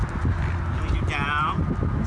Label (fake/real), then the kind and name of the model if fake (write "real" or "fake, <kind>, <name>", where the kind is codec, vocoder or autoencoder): real